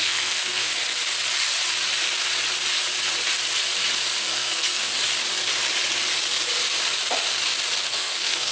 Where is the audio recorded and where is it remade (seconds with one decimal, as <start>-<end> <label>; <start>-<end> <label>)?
0.0-0.7 remade; 0.7-4.2 recorded; 4.2-4.9 remade; 4.9-7.8 recorded; 7.8-8.5 remade